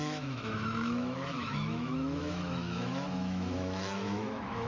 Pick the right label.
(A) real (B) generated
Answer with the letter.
B